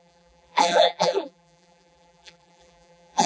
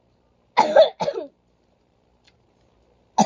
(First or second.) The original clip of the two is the second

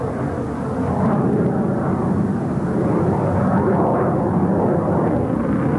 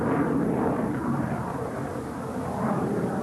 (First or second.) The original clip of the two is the first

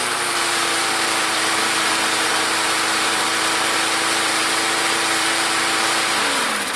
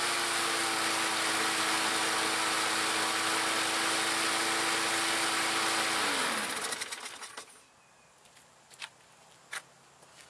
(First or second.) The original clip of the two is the second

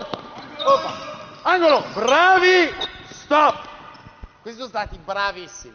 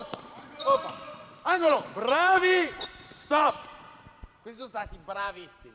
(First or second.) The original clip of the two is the first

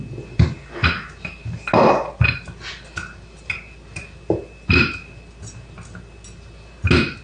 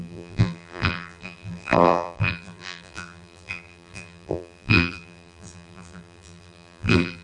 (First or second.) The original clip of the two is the first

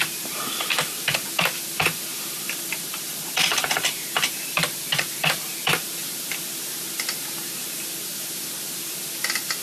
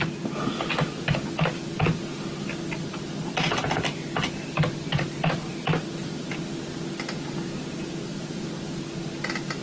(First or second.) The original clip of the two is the second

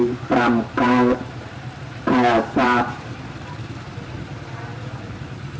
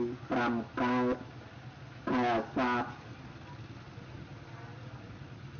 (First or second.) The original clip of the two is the second